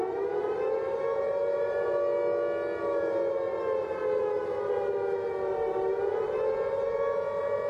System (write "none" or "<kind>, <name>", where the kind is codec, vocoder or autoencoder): none